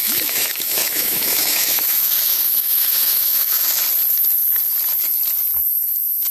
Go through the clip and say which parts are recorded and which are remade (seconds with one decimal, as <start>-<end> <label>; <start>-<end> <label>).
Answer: 0.0-3.8 remade; 3.8-6.3 recorded